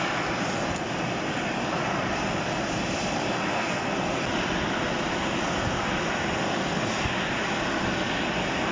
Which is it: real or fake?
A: real